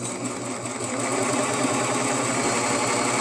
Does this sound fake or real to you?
real